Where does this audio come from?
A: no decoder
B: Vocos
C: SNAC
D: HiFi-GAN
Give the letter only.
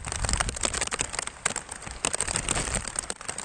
A